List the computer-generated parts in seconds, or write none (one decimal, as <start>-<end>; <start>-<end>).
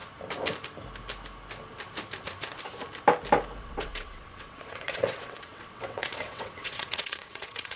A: 3.6-7.8